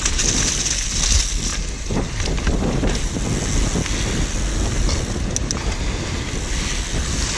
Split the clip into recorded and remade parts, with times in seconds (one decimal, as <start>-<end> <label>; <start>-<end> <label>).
0.0-7.4 recorded